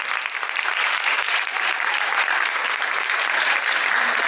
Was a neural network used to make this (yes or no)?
yes